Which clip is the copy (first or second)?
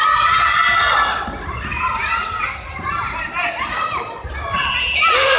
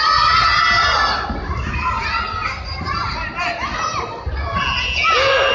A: first